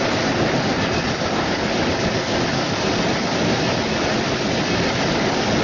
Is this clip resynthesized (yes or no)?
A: no